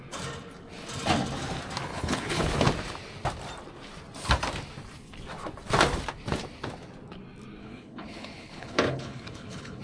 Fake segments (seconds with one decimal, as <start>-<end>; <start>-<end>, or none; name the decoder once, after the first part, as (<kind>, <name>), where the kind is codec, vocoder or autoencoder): 1.9-2.4 (codec, HILCodec); 7.6-9.8